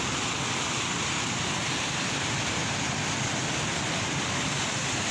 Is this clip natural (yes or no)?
yes